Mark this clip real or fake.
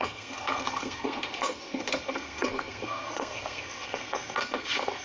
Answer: fake